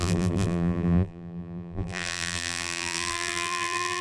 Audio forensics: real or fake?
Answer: fake